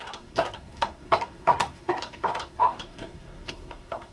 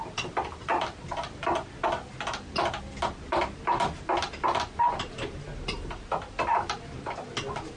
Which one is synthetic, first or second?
first